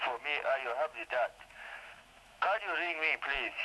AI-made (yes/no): yes